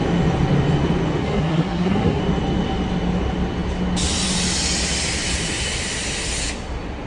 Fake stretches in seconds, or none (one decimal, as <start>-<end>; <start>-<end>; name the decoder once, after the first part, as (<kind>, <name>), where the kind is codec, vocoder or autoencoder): 1.2-2.2 (codec, SNAC)